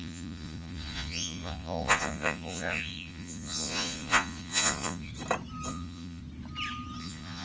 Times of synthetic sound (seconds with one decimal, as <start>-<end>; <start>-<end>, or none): 0.0-5.1; 5.7-6.2; 7.0-7.4